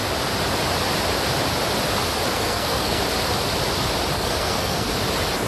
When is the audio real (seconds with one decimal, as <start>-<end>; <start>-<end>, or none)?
0.0-2.3; 3.0-4.1; 4.9-5.5